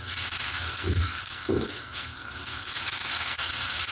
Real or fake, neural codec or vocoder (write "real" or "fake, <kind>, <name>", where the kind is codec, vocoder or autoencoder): fake, codec, SNAC